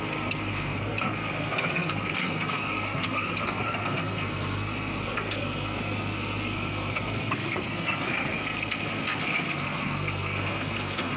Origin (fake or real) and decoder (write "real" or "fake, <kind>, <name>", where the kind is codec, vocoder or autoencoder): fake, codec, SNAC